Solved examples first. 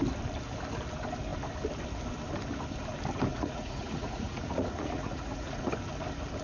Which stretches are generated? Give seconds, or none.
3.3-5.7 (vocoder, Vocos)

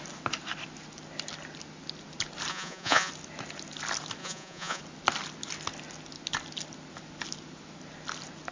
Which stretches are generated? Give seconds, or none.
2.5-3.1 (vocoder, Vocos); 4.2-4.8

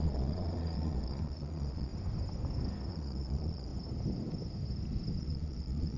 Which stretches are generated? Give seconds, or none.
0.0-1.9 (vocoder, Vocos); 2.9-3.7; 5.2-6.0

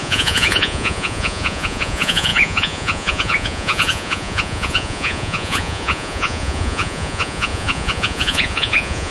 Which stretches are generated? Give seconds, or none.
0.0-9.1 (vocoder, Vocos)

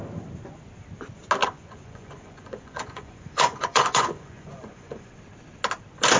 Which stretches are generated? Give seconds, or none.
1.4-5.1 (vocoder, Vocos)

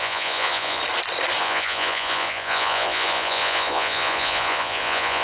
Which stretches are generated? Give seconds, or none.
0.0-0.8 (vocoder, Vocos); 1.4-5.2